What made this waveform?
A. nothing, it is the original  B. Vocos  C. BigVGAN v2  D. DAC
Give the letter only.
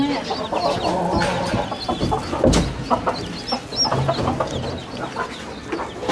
A